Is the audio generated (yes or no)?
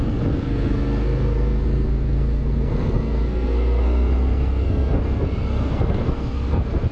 yes